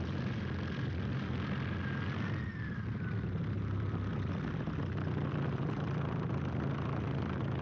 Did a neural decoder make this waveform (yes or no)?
yes